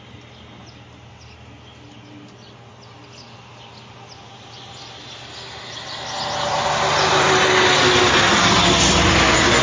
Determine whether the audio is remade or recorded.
recorded